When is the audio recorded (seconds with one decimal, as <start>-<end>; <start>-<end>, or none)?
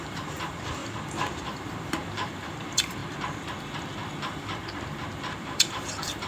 3.0-5.4